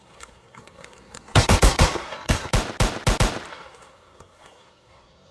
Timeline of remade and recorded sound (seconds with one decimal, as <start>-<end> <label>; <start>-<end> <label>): 0.0-2.5 remade; 2.5-3.5 recorded; 3.5-5.3 remade